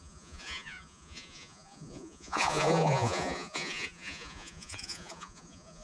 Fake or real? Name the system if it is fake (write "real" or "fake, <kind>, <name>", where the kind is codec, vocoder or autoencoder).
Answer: fake, vocoder, Vocos